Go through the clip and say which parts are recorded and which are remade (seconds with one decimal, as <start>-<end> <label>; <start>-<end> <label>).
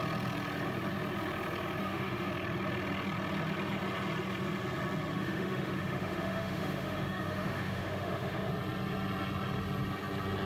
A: 0.0-1.8 recorded; 1.8-2.3 remade; 2.3-5.1 recorded; 5.1-8.5 remade; 8.5-10.5 recorded